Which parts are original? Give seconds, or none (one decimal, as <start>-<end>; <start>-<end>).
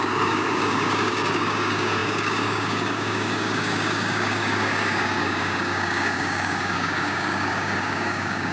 none